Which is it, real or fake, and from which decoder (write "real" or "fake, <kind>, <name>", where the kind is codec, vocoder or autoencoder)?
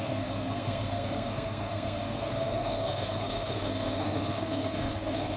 fake, codec, SNAC